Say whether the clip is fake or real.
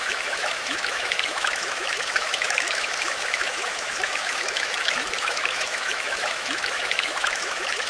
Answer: fake